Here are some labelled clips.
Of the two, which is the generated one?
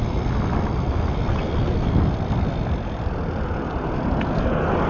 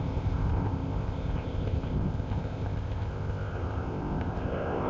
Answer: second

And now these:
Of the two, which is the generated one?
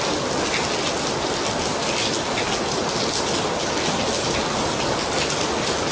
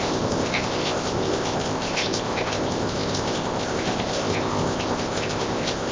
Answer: second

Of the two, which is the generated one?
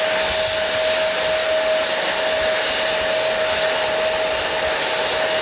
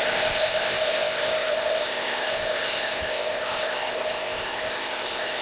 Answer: second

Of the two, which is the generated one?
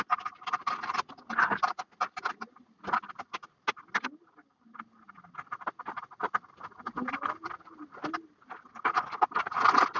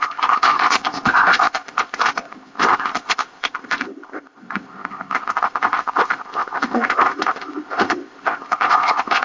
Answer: second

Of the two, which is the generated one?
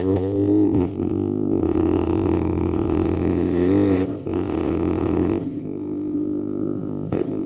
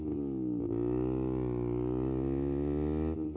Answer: first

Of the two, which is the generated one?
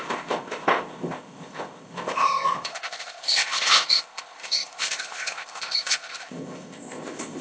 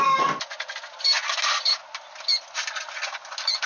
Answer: first